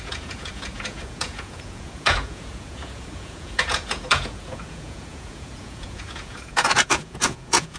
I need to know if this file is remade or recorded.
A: remade